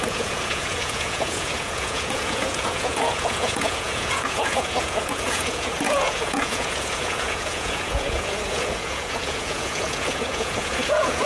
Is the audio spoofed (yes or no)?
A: yes